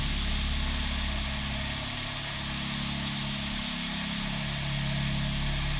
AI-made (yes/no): no